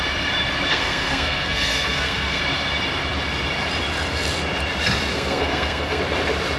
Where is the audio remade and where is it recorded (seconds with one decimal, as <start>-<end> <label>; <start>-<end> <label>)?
0.0-0.7 recorded; 0.7-2.4 remade; 2.4-5.1 recorded; 5.1-6.0 remade; 6.0-6.6 recorded